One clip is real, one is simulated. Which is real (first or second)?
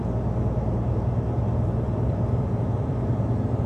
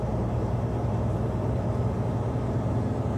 second